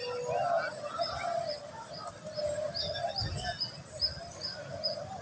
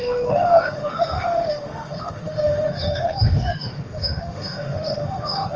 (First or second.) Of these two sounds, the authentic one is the first